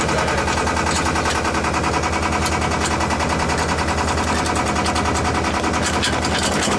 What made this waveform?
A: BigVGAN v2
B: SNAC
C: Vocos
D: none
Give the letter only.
D